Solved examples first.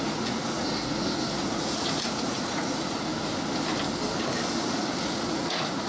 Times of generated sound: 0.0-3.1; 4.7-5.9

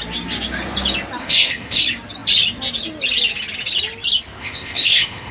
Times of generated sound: 1.2-1.8; 4.4-5.3